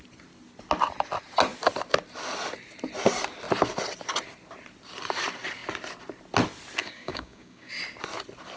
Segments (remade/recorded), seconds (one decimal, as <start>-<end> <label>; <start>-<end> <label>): 0.0-6.8 recorded; 6.8-7.7 remade; 7.7-8.6 recorded

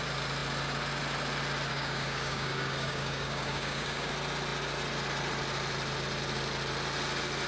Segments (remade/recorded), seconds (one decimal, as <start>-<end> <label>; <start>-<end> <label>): 0.0-1.7 recorded; 1.7-4.1 remade; 4.1-7.5 recorded

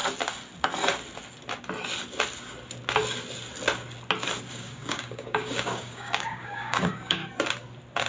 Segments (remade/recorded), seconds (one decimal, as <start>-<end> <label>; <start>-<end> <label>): 0.0-4.5 recorded; 4.5-7.2 remade; 7.2-8.1 recorded

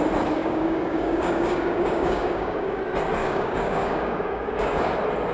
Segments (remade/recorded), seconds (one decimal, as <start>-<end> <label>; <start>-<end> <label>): 0.0-0.4 recorded; 0.4-2.8 remade; 2.8-3.2 recorded; 3.2-4.8 remade; 4.8-5.3 recorded

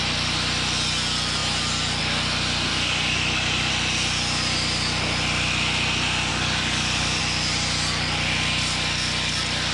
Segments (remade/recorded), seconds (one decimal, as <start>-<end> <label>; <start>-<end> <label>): 0.0-2.7 recorded; 2.7-3.7 remade; 3.7-6.3 recorded; 6.3-7.2 remade; 7.2-9.7 recorded

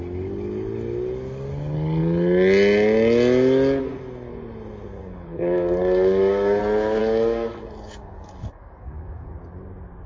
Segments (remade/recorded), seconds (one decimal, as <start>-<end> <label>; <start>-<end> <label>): 0.0-5.0 recorded; 5.0-6.6 remade; 6.6-7.0 recorded; 7.0-9.3 remade; 9.3-10.1 recorded

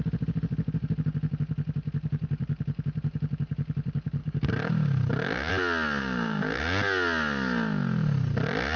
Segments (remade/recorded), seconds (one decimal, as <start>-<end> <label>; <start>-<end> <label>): 0.0-4.2 recorded; 4.2-5.5 remade; 5.5-6.0 recorded; 6.0-6.6 remade; 6.6-8.8 recorded